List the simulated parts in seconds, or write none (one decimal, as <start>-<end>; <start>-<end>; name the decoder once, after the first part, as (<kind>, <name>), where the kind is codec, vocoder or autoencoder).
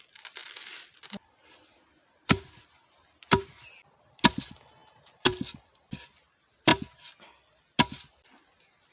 none